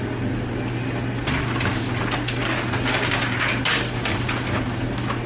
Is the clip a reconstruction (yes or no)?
no